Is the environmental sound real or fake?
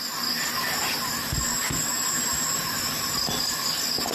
real